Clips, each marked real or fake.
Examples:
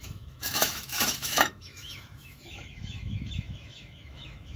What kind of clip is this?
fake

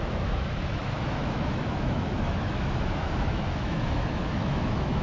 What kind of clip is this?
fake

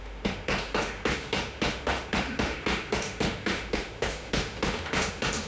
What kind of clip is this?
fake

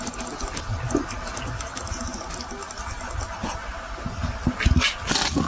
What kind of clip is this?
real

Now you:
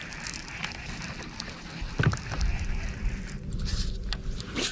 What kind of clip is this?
real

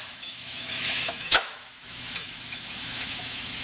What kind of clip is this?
fake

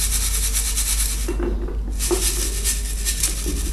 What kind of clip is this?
real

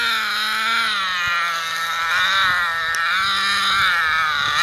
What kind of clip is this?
real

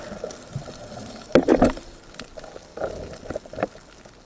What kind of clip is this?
real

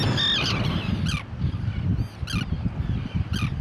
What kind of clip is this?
real